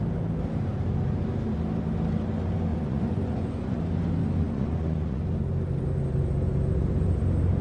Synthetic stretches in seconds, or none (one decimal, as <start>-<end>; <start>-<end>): 2.7-3.8; 4.4-5.2